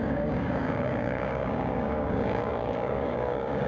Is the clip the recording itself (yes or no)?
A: no